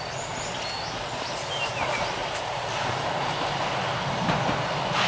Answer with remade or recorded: recorded